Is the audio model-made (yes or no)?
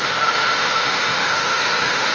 yes